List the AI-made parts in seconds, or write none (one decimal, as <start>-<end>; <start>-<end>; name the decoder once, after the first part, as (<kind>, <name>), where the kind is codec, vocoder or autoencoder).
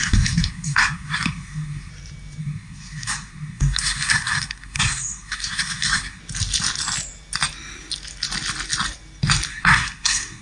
0.0-1.9 (codec, SNAC); 2.4-6.2; 9.5-10.4